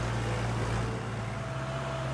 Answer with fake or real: real